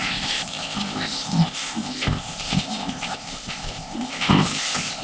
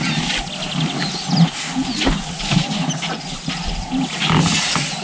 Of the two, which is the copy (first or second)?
first